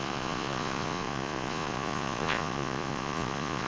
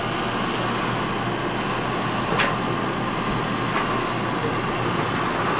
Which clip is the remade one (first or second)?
first